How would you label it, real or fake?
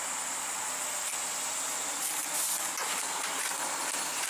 real